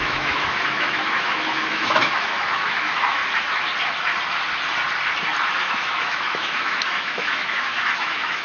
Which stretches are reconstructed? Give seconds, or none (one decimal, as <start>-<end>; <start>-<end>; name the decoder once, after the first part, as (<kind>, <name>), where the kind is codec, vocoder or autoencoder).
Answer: 0.0-3.2 (autoencoder, DAC-VAE); 5.6-8.4